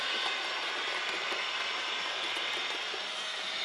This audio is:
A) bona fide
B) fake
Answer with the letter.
A